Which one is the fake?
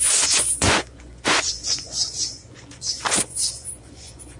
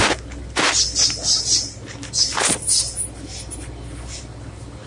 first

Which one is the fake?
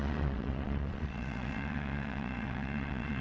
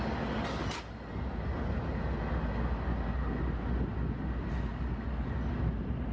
first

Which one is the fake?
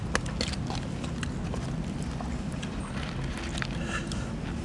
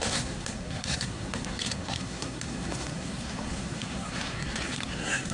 second